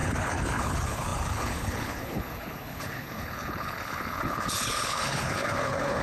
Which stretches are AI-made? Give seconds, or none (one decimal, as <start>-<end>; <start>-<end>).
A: 0.0-6.0